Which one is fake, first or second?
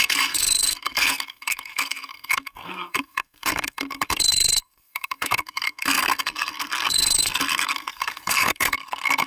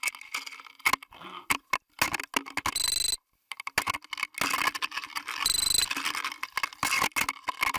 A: first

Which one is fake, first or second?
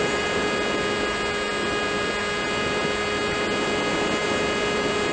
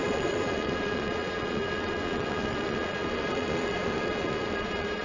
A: second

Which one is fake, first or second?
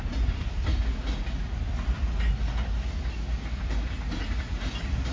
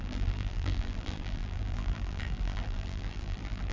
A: second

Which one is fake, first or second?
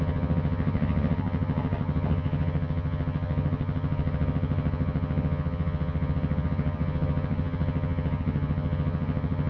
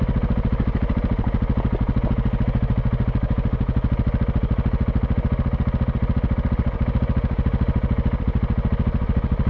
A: first